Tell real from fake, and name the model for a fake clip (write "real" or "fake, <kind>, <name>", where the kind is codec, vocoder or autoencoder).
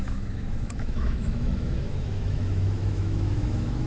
fake, autoencoder, DAC-VAE